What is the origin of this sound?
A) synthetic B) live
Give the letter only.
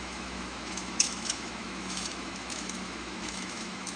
A